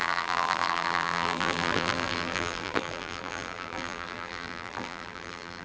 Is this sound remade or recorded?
remade